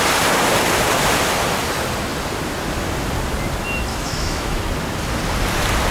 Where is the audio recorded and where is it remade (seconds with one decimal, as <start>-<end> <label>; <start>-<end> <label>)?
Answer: 0.0-3.9 recorded; 3.9-4.6 remade; 4.6-5.9 recorded